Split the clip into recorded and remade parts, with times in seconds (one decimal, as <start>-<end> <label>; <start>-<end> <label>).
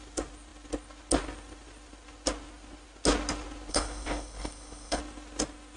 0.0-3.7 recorded; 3.7-5.0 remade; 5.0-5.8 recorded